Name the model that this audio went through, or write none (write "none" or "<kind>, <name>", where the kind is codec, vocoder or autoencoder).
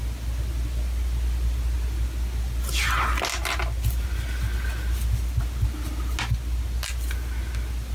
none